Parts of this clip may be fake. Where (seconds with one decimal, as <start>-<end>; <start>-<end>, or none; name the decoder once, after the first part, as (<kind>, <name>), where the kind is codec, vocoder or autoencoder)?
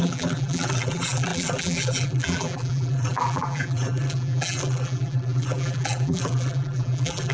0.0-7.3 (vocoder, BigVGAN v2)